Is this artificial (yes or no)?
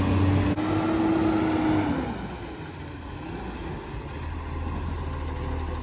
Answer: no